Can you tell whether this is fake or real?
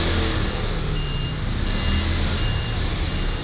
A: real